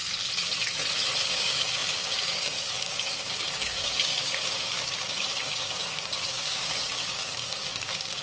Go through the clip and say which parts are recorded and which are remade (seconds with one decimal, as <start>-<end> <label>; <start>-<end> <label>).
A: 0.0-1.2 recorded; 1.2-8.2 remade